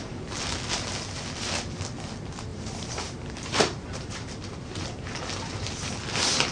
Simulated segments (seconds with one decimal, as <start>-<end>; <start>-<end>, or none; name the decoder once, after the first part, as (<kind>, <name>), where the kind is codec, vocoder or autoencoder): 2.5-5.8 (vocoder, BigVGAN v2)